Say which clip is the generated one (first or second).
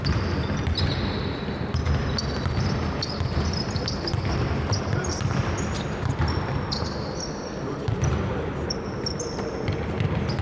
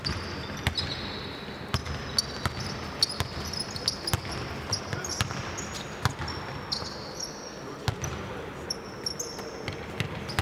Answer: first